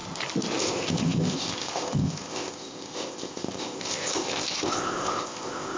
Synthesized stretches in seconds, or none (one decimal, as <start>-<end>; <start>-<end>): 0.6-5.8